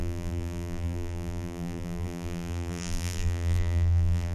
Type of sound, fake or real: fake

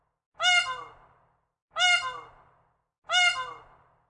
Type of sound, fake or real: real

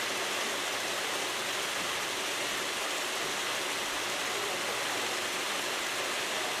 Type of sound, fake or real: real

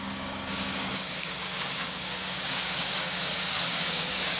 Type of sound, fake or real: fake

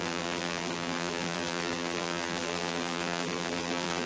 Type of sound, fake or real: fake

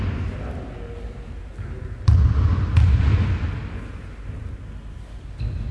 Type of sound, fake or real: real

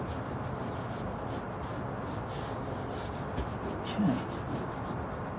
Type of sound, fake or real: real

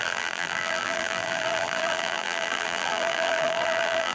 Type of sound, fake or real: fake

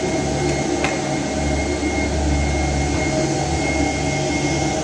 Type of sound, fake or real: real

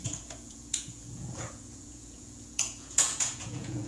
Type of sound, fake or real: fake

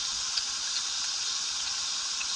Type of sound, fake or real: fake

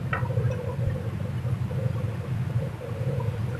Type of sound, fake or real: real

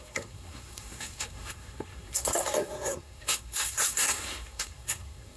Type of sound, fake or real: fake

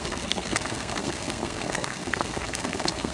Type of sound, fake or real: fake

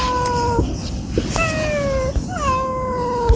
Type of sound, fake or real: real